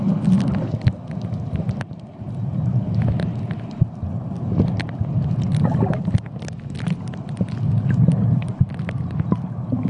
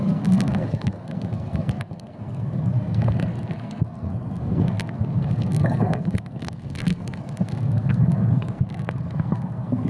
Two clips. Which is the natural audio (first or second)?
first